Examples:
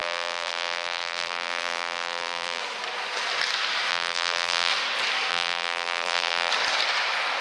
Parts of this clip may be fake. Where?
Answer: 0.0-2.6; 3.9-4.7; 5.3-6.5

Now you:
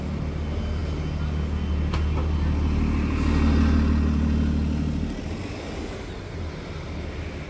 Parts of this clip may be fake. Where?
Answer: none